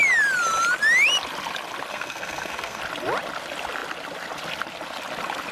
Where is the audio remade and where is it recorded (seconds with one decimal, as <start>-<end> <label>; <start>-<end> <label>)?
0.0-1.9 recorded; 1.9-2.8 remade; 2.8-5.5 recorded